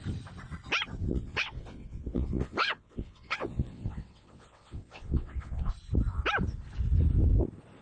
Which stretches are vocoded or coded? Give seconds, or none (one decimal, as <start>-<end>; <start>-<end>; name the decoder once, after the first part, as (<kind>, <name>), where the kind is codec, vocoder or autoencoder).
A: 1.0-5.7 (vocoder, WaveNeXt)